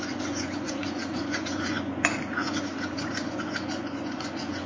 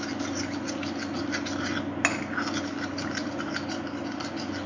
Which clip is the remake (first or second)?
first